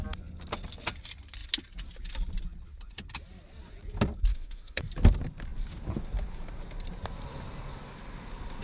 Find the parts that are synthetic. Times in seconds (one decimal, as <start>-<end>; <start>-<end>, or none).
4.3-4.8